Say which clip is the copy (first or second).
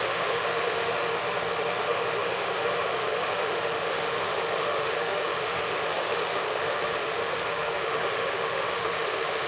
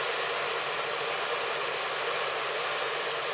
first